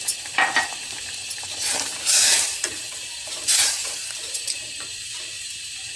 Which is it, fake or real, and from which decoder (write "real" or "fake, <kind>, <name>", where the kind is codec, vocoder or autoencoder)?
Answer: fake, vocoder, BigVGAN v2